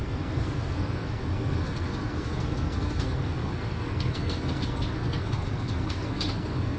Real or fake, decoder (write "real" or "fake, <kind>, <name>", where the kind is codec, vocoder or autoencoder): fake, codec, SNAC